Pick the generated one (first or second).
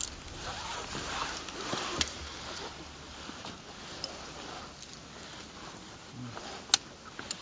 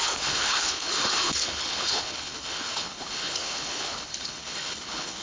second